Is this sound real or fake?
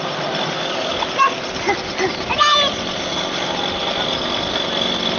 real